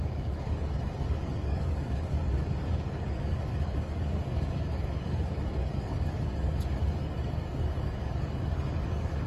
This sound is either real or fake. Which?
fake